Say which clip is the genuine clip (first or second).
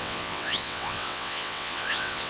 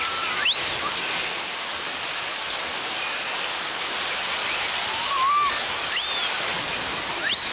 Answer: second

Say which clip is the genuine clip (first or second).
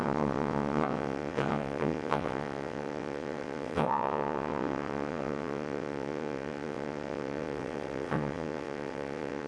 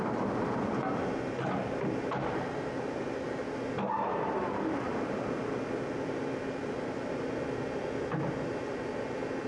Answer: second